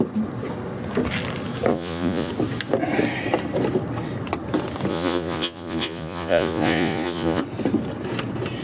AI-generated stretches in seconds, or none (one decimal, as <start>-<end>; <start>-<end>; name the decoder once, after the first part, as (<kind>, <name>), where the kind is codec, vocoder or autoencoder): 1.7-2.3 (vocoder, Vocos); 4.9-7.4